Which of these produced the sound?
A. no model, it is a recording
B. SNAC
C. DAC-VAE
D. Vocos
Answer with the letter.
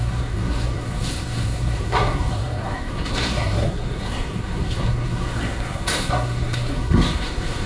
B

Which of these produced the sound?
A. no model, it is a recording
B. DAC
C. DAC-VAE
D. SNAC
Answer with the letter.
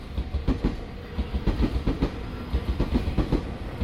A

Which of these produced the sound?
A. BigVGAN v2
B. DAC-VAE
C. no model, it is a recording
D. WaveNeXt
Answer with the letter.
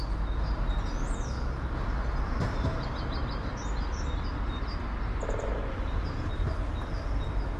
C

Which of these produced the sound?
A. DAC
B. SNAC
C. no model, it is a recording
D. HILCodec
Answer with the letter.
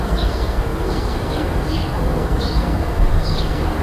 B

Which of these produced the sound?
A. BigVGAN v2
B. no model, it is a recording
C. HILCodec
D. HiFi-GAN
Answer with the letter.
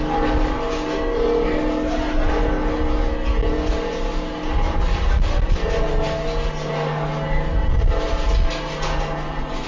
B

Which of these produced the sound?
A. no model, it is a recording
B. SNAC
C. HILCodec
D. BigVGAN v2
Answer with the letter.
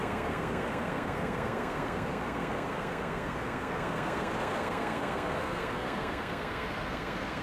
B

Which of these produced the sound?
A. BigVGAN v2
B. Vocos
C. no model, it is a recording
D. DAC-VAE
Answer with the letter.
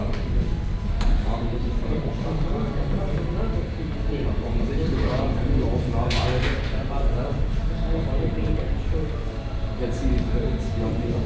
A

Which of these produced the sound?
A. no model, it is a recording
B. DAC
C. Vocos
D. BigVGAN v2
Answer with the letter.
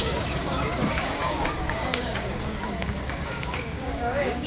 B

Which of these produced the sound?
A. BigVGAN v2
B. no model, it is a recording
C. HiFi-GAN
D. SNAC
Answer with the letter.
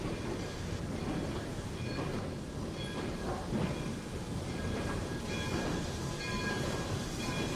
A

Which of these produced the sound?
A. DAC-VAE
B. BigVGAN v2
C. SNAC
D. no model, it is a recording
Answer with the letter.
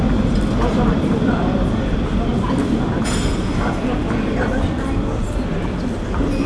D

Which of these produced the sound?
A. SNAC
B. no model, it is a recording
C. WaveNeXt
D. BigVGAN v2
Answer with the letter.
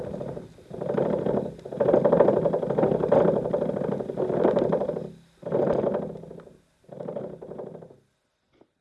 B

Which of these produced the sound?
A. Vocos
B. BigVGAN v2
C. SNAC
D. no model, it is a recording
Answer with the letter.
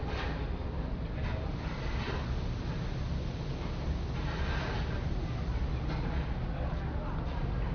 D